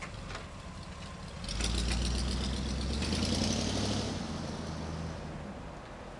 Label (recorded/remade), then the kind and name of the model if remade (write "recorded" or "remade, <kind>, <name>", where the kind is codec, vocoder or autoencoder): recorded